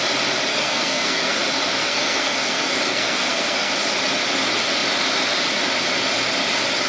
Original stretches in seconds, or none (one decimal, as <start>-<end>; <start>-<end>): 0.0-0.5; 1.4-1.8; 3.7-6.9